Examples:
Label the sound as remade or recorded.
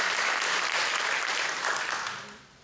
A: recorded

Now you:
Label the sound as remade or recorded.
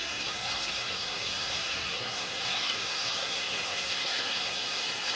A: remade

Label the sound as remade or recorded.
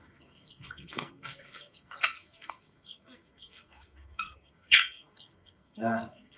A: remade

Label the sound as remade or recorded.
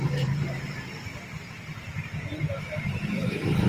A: remade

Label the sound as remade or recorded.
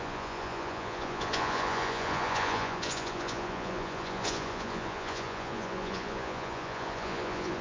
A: remade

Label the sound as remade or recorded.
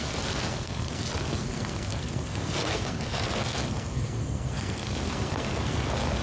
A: remade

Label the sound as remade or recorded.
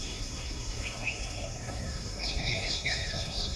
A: remade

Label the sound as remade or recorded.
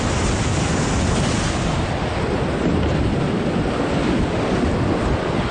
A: recorded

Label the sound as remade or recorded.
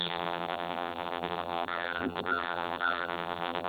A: remade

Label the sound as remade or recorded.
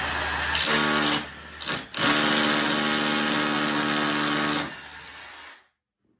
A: recorded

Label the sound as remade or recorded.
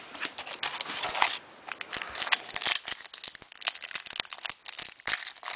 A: recorded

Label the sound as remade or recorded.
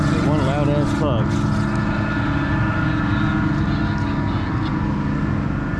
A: recorded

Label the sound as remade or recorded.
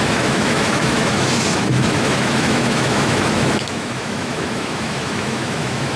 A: remade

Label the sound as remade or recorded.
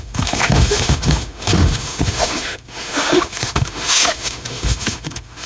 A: remade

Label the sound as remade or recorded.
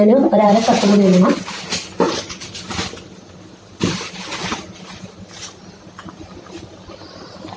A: recorded